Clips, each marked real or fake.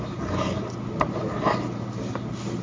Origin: real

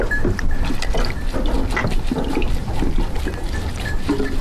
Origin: real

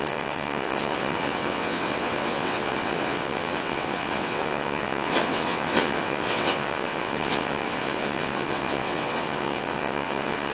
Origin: fake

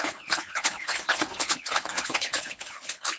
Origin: fake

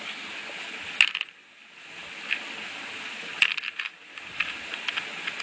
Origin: real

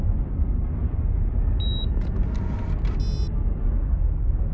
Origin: real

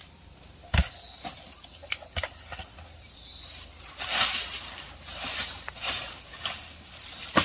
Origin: real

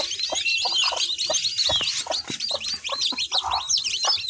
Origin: real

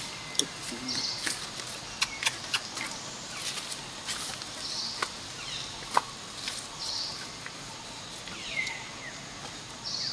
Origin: real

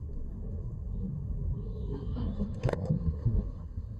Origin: fake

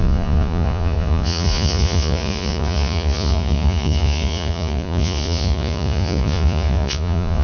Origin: fake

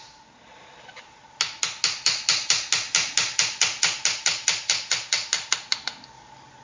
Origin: real